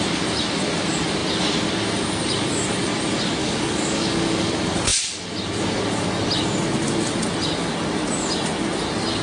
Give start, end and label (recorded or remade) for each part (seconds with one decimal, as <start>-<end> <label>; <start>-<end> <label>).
0.0-3.4 recorded; 3.4-4.5 remade; 4.5-9.2 recorded